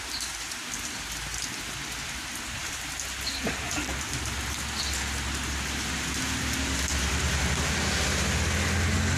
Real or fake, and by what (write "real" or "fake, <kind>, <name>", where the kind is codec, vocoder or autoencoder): real